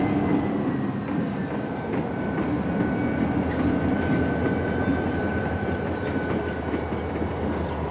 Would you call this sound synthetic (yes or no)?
no